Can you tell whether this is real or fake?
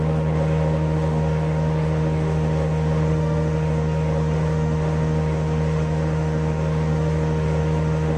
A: fake